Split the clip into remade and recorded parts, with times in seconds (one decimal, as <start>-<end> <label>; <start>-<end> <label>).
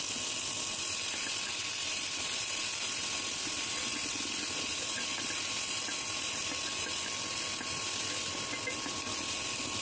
0.0-9.8 recorded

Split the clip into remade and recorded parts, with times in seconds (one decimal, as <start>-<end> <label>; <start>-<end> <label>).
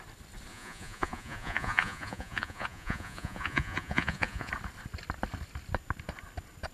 0.0-0.5 recorded; 0.5-4.5 remade; 4.5-6.7 recorded